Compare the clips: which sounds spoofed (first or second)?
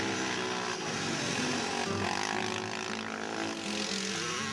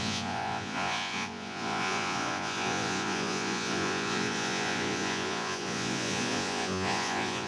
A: second